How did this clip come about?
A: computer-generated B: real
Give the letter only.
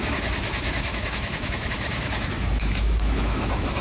A